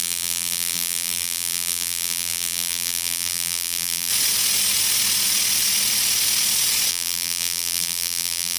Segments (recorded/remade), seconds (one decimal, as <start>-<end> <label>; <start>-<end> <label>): 0.0-4.1 remade; 4.1-6.9 recorded; 6.9-8.6 remade

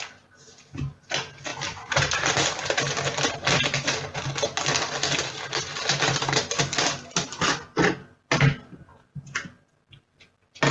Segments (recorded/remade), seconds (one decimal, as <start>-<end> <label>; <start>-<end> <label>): 0.0-1.5 recorded; 1.5-2.4 remade; 2.4-10.7 recorded

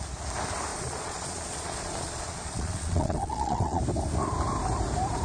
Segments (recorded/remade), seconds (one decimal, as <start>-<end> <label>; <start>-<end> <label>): 0.0-0.7 recorded; 0.7-3.8 remade; 3.8-5.2 recorded

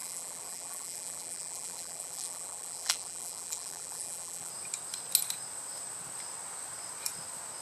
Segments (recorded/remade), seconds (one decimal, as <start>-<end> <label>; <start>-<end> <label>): 0.0-4.5 remade; 4.5-7.6 recorded

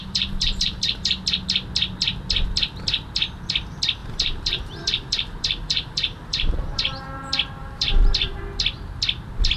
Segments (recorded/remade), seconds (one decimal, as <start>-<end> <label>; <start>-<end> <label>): 0.0-1.1 remade; 1.1-4.0 recorded; 4.0-7.0 remade; 7.0-7.6 recorded; 7.6-8.4 remade; 8.4-9.6 recorded

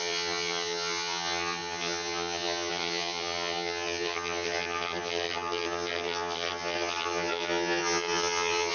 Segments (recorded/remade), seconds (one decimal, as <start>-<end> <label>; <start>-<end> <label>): 0.0-8.7 remade

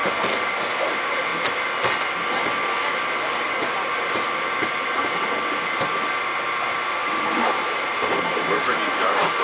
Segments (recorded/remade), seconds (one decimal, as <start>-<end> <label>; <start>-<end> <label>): 0.0-0.9 recorded; 0.9-1.3 remade; 1.3-6.6 recorded; 6.6-9.4 remade

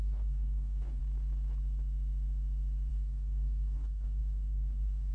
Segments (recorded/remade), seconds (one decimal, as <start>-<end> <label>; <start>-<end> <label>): 0.0-1.0 remade; 1.0-2.9 recorded; 2.9-5.1 remade